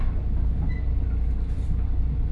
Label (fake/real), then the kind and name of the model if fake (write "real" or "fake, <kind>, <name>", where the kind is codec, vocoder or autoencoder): real